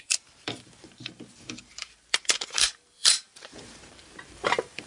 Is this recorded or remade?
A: remade